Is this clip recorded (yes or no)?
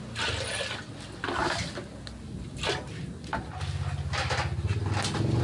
yes